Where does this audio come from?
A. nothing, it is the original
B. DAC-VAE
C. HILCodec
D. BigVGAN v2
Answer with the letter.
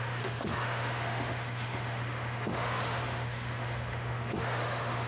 B